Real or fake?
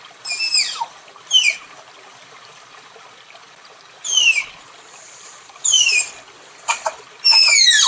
fake